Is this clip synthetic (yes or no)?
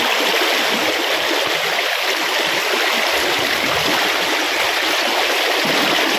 no